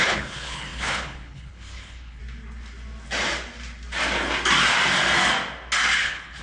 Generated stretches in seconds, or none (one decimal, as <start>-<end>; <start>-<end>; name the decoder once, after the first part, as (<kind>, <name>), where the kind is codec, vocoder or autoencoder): 0.0-2.2 (codec, HILCodec); 6.0-6.4